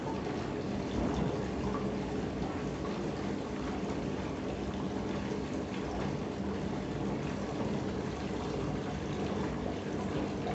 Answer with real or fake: real